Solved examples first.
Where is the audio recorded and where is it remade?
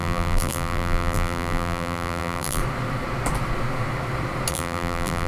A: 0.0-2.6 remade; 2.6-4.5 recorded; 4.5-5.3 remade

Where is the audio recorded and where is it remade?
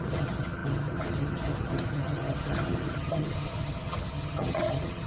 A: 0.0-5.1 remade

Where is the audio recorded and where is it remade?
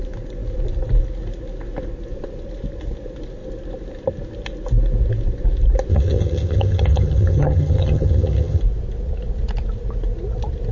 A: 0.0-5.9 recorded; 5.9-8.6 remade; 8.6-10.7 recorded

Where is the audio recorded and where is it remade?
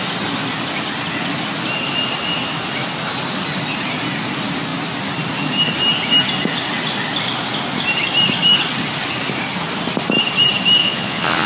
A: 0.0-10.8 recorded; 10.8-11.5 remade